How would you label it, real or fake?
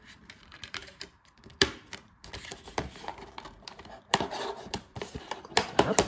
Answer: fake